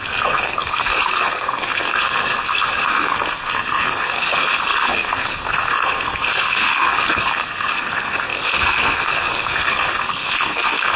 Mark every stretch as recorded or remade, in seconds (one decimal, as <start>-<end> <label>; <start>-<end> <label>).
0.0-11.0 remade